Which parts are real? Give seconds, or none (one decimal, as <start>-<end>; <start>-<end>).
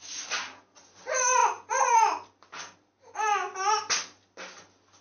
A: 0.0-5.0